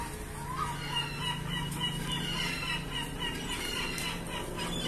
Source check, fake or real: real